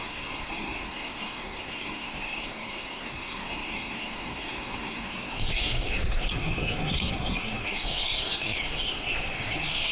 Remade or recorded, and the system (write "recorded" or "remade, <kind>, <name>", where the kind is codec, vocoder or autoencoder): remade, codec, SNAC